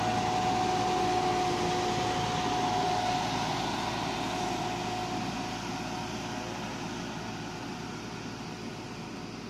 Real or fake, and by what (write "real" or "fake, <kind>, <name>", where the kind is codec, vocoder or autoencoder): real